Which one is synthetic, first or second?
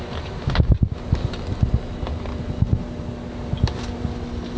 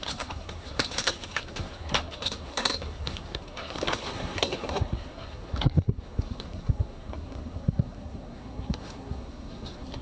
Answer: second